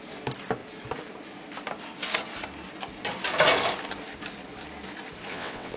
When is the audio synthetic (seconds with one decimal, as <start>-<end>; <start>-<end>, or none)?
5.3-5.8